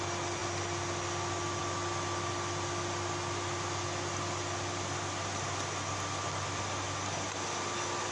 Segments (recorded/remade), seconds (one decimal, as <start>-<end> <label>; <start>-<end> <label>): 0.0-8.1 recorded

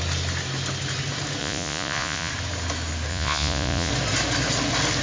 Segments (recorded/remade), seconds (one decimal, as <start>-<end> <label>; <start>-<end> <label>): 0.0-1.4 recorded; 1.4-2.3 remade; 2.3-3.1 recorded; 3.1-3.9 remade; 3.9-5.0 recorded

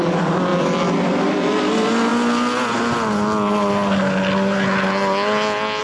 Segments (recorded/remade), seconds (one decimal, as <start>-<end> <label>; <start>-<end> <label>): 0.0-2.1 remade; 2.1-5.8 recorded

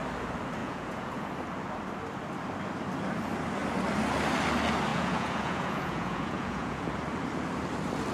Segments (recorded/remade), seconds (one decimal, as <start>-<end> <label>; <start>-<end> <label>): 0.0-0.6 recorded; 0.6-1.3 remade; 1.3-4.9 recorded; 4.9-6.9 remade; 6.9-8.1 recorded

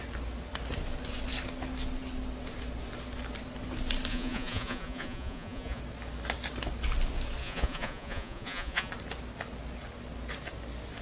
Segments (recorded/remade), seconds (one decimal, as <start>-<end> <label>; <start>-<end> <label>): 0.0-4.1 recorded; 4.1-5.8 remade; 5.8-7.4 recorded; 7.4-8.9 remade; 8.9-11.0 recorded

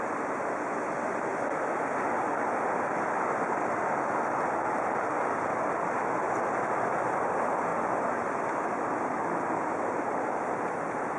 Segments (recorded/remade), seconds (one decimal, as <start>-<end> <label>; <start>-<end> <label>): 0.0-11.2 recorded

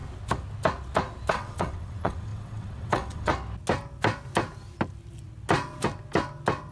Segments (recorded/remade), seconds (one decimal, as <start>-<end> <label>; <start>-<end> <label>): 0.0-1.3 recorded; 1.3-3.3 remade; 3.3-6.7 recorded